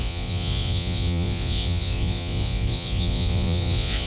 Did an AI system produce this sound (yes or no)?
yes